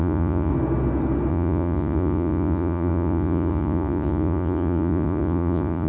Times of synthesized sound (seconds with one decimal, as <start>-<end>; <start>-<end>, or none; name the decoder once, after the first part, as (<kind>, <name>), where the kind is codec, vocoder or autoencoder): 0.0-0.5 (vocoder, Vocos); 1.3-5.9